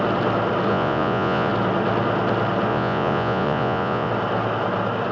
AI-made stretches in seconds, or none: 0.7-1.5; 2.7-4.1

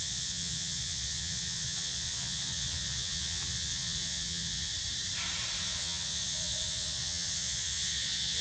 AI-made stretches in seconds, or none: 0.0-4.7; 5.6-8.4

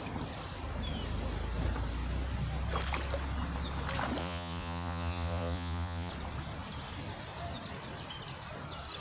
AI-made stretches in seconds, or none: 4.2-6.1

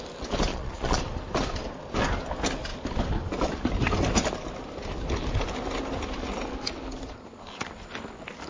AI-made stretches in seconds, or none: 0.5-1.0

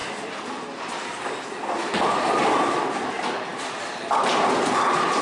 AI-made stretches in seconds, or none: none

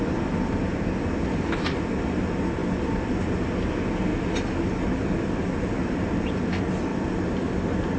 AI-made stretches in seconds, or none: none